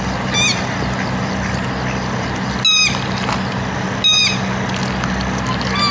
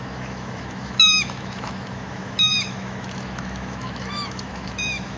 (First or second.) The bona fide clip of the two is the first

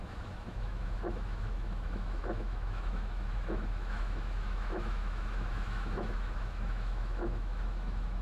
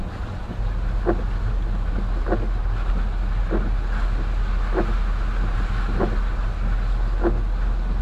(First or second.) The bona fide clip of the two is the second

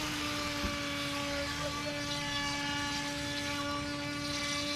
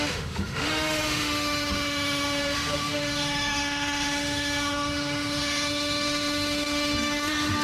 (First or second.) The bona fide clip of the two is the first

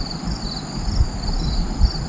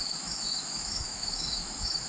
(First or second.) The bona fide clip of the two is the first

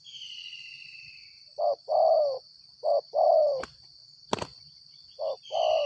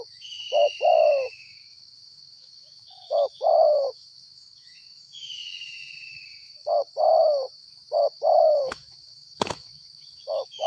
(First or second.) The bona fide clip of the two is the first